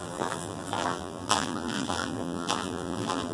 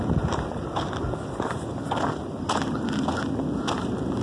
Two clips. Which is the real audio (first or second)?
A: second